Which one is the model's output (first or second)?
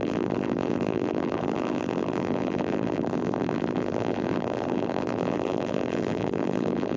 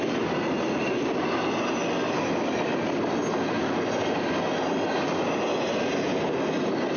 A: first